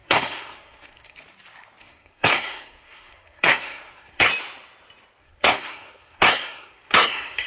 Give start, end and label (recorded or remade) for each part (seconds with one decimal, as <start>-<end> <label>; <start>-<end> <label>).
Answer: 0.0-1.2 remade; 1.2-1.8 recorded; 1.8-4.3 remade; 4.3-5.2 recorded; 5.2-7.5 remade